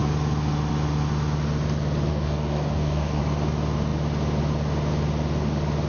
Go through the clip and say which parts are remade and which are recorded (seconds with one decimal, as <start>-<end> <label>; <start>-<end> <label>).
0.0-2.1 recorded; 2.1-3.2 remade; 3.2-5.9 recorded